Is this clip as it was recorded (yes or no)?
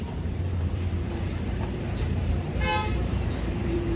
no